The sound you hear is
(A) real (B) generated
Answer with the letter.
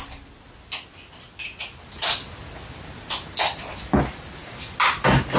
A